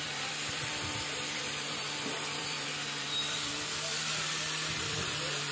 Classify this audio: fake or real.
fake